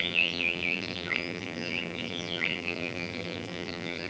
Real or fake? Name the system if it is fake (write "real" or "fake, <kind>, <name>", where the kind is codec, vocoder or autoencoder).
fake, vocoder, BigVGAN v2